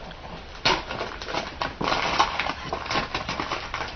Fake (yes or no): no